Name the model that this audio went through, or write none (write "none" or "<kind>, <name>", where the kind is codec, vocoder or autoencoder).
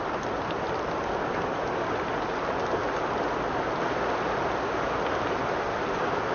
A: none